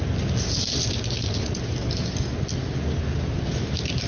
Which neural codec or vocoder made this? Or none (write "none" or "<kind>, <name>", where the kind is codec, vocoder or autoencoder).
none